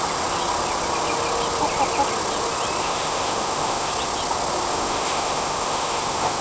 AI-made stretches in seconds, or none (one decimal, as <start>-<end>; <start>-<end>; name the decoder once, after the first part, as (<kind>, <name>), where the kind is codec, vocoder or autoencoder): 2.8-3.9 (autoencoder, DAC-VAE); 4.7-6.4